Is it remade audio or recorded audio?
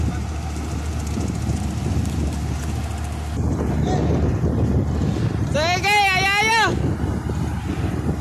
recorded